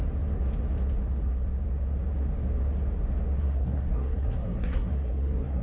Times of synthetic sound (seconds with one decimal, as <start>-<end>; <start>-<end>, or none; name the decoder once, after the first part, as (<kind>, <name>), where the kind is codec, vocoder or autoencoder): 3.4-5.6 (codec, SNAC)